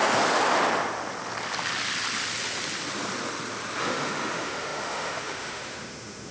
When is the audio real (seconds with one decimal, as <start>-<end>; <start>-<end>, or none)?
0.0-3.8